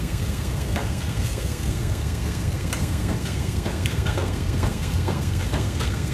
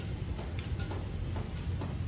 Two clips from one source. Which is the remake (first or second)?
first